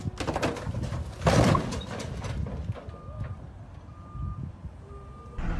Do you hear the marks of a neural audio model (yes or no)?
no